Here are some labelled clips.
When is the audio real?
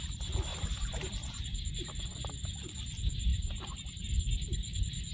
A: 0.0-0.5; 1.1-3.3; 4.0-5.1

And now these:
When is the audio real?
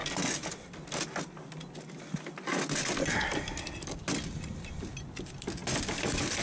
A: 0.0-6.4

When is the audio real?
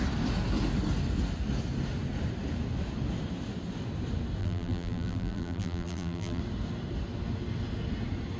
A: 0.0-4.4; 6.4-8.4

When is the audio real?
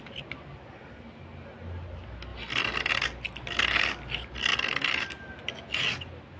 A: 0.0-6.4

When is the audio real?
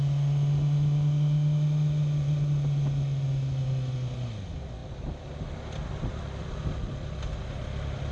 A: 0.0-8.1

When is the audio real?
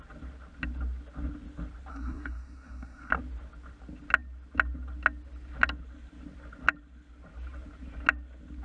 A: 0.0-1.9; 3.1-8.6